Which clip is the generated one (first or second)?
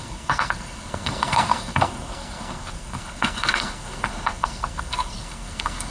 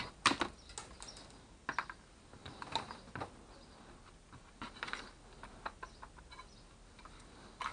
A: first